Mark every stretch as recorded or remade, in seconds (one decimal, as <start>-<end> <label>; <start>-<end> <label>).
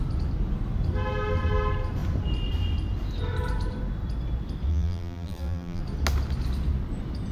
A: 0.0-4.7 recorded; 4.7-5.8 remade; 5.8-7.3 recorded